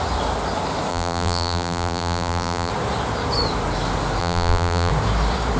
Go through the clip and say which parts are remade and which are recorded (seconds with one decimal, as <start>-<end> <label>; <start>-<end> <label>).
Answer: 0.0-0.9 recorded; 0.9-2.7 remade; 2.7-4.2 recorded; 4.2-4.9 remade; 4.9-5.6 recorded